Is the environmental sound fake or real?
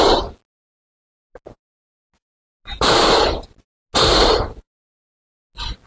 real